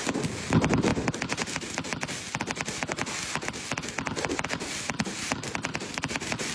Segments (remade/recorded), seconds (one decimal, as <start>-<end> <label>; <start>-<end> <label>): 0.0-0.9 remade; 0.9-4.3 recorded; 4.3-6.5 remade